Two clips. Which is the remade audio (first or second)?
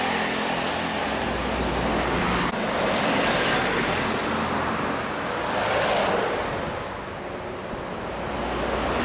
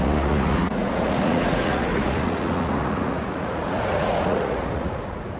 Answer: second